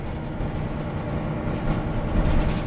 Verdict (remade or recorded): recorded